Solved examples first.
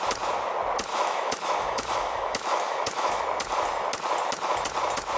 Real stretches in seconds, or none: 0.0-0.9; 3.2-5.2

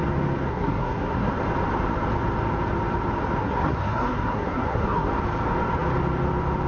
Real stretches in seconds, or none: 0.0-0.5; 1.3-3.4; 5.1-6.7

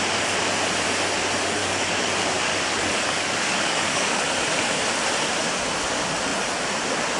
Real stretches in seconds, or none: 0.0-1.6; 2.1-2.5; 4.2-7.2